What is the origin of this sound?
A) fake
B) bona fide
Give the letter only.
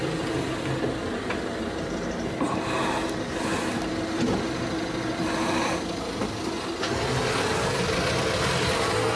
B